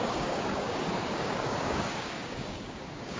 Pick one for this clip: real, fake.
fake